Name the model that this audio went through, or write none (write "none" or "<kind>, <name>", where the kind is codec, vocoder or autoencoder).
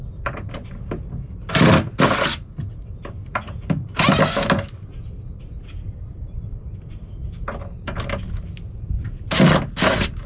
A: none